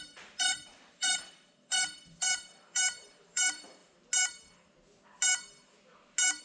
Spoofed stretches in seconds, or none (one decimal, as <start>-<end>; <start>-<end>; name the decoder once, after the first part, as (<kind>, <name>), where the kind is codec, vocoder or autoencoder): 0.0-3.8 (vocoder, BigVGAN v2)